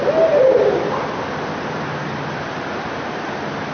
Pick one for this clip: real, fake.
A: real